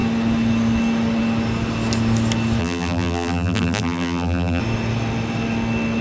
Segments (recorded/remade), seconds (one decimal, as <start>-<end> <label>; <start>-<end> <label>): 0.0-2.6 recorded; 2.6-4.6 remade; 4.6-6.0 recorded